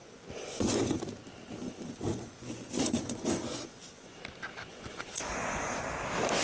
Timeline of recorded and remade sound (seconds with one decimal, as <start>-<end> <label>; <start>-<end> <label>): 0.0-1.0 remade; 1.0-1.6 recorded; 1.6-4.2 remade; 4.2-4.7 recorded; 4.7-5.8 remade; 5.8-6.4 recorded